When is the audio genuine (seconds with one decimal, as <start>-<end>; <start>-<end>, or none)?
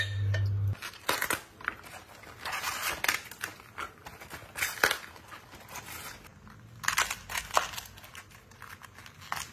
0.0-9.5